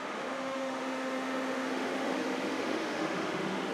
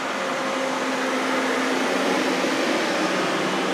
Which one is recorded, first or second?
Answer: second